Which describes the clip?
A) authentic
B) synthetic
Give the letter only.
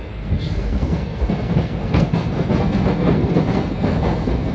B